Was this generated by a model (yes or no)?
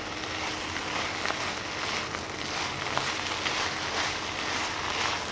no